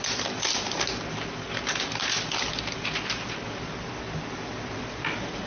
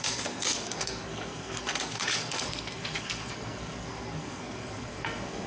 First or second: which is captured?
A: first